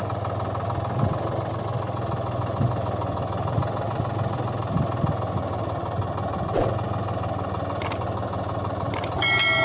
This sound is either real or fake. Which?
real